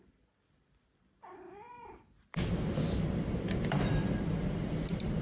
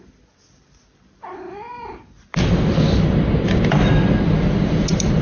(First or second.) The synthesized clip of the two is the first